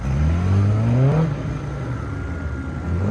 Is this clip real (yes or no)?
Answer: yes